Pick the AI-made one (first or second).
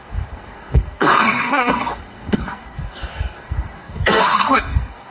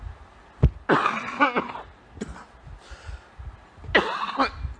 first